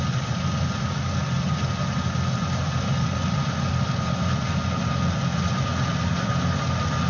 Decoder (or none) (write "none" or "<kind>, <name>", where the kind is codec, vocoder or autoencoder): none